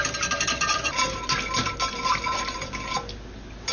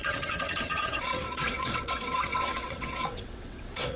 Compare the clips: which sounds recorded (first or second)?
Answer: first